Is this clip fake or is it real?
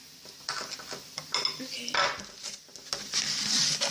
real